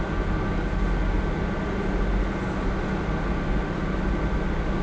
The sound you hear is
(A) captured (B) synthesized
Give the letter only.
A